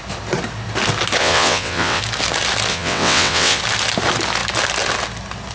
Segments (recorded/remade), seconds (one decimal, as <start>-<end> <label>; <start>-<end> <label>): 0.0-1.2 recorded; 1.2-2.0 remade; 2.0-2.7 recorded; 2.7-3.6 remade; 3.6-5.5 recorded